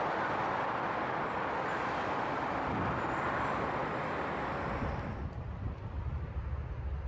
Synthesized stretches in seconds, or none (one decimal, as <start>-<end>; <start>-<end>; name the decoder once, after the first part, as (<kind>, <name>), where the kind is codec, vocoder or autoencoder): none